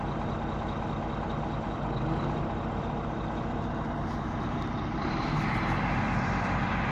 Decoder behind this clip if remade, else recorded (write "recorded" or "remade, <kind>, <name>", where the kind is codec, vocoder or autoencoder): recorded